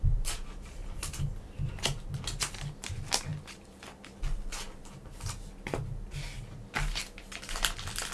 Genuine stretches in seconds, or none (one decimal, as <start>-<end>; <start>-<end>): 0.0-0.8; 1.7-8.1